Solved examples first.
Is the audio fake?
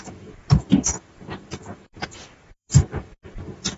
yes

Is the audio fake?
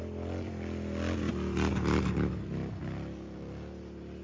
no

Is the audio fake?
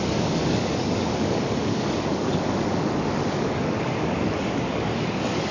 yes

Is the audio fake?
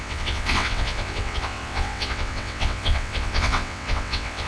yes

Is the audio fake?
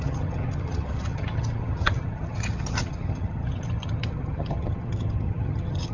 yes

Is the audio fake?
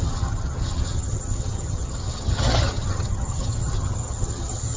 yes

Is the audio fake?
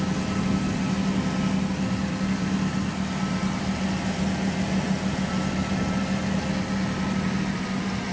no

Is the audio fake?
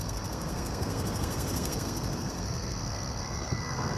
yes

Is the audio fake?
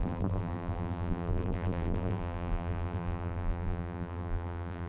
yes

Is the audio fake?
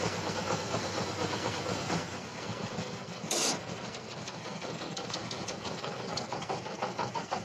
yes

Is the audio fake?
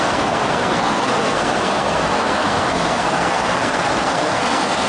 yes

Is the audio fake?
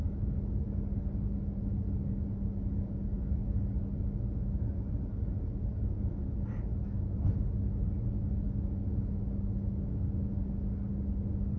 no